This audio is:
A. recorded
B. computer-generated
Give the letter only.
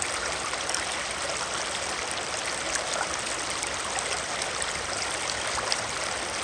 A